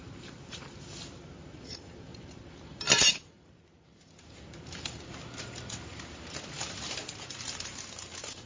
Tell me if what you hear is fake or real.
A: fake